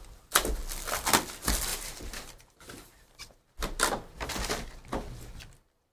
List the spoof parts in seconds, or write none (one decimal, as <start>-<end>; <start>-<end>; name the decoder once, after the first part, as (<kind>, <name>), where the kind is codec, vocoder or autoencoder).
1.7-3.2 (vocoder, BigVGAN v2)